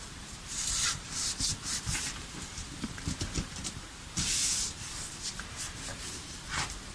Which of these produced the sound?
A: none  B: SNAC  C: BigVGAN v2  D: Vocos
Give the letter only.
C